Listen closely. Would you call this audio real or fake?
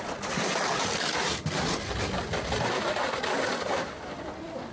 real